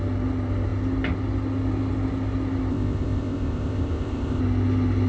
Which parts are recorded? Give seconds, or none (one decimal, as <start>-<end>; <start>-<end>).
0.0-2.7; 4.4-5.1